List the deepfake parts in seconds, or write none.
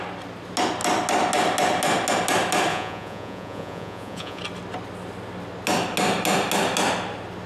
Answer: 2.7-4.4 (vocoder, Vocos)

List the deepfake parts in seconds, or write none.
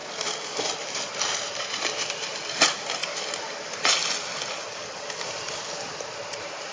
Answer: none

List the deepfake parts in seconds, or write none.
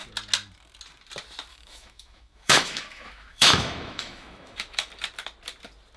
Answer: 1.5-4.9 (autoencoder, DAC-VAE)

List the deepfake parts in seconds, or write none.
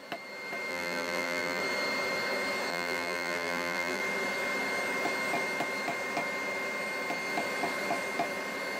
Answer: 0.7-1.6 (vocoder, BigVGAN v2); 2.7-4.0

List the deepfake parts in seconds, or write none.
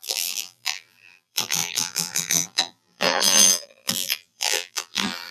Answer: 0.0-5.3 (vocoder, BigVGAN v2)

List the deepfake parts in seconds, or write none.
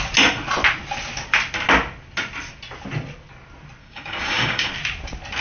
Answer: 3.8-4.7 (codec, DAC)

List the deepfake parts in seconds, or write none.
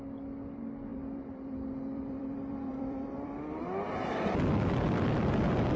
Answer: 0.9-3.6 (vocoder, BigVGAN v2)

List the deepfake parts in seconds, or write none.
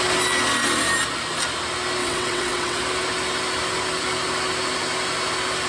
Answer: 2.0-2.8 (vocoder, WaveNeXt)